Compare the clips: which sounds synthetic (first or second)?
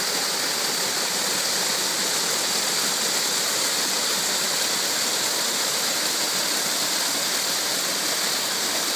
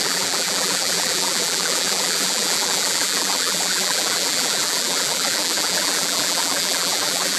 second